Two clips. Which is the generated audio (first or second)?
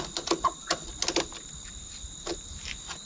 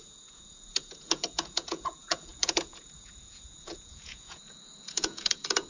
second